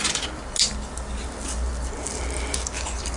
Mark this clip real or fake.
real